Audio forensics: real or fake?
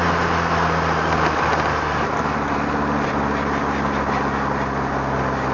real